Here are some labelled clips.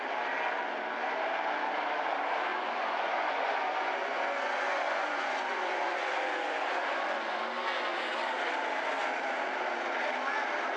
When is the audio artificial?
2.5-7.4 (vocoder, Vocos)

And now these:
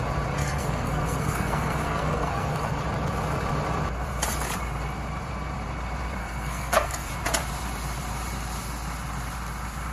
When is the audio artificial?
0.4-2.8 (codec, SNAC); 6.2-7.1